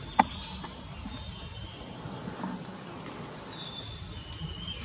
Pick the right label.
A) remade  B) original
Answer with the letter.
B